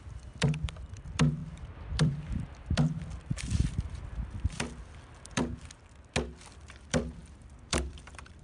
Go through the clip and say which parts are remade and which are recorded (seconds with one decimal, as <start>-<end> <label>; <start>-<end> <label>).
0.0-5.4 remade; 5.4-6.5 recorded; 6.5-8.4 remade